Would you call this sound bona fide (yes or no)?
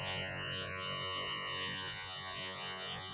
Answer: no